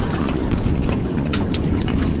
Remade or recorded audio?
remade